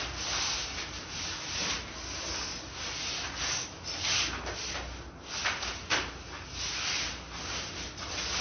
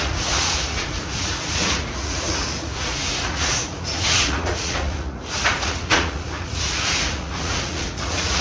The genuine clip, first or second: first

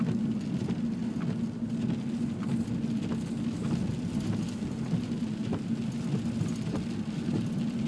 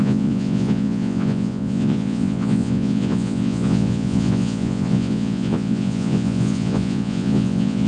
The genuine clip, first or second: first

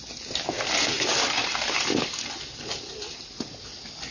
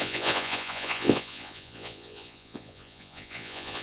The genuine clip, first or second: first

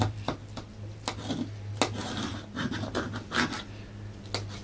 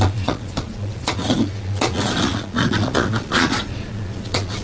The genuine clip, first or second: first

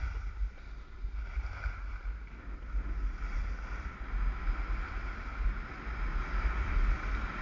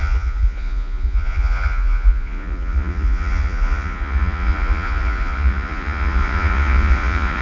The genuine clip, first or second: first